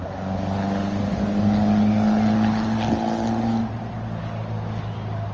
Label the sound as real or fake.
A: real